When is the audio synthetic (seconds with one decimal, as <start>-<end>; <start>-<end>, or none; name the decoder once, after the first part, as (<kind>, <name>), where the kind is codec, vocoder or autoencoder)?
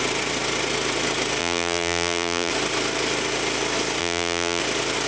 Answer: 1.4-2.5 (vocoder, BigVGAN v2); 4.0-4.6